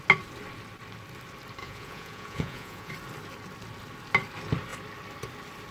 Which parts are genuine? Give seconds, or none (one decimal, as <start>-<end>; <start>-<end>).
0.0-1.6; 2.9-5.7